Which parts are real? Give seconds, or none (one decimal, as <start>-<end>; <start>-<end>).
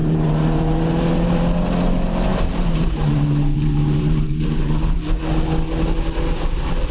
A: 1.4-2.3; 5.2-6.9